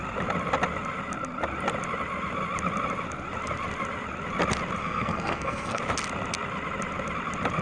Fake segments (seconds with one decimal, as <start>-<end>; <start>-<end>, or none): 4.8-5.8